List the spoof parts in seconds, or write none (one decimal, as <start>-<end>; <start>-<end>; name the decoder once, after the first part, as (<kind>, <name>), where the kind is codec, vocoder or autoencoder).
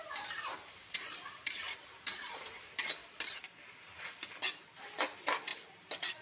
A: 0.0-2.6 (vocoder, BigVGAN v2); 3.0-4.3; 5.5-6.2